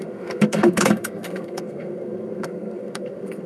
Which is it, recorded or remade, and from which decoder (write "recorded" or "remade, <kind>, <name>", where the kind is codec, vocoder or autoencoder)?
remade, codec, SNAC